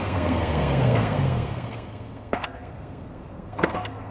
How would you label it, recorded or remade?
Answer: remade